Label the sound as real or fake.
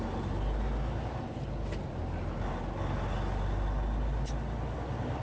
real